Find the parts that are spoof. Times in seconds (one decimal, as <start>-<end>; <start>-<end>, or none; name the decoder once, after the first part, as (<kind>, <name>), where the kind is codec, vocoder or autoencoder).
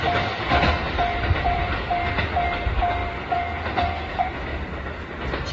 0.8-1.9 (vocoder, BigVGAN v2); 3.0-3.9; 4.5-5.5